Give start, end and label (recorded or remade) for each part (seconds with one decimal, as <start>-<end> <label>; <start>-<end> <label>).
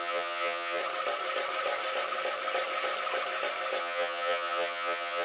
0.0-0.8 remade; 0.8-3.8 recorded; 3.8-5.2 remade